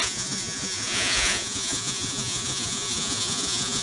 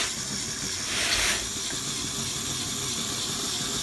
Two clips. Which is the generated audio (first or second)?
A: first